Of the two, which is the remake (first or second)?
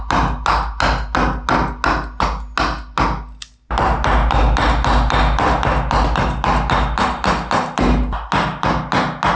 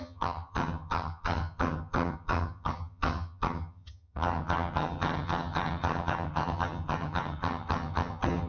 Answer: second